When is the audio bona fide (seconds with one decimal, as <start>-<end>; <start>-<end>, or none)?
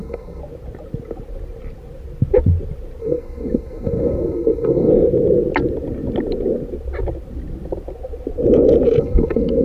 0.4-3.0; 4.9-9.0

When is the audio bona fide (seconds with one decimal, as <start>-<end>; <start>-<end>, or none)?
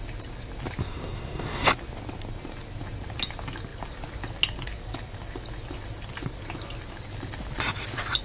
0.0-0.8; 1.7-8.2